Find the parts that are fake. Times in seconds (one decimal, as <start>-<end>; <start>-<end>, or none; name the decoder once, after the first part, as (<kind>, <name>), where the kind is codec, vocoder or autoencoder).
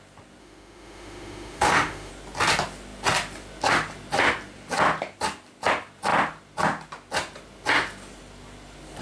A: 0.4-2.1 (autoencoder, DAC-VAE)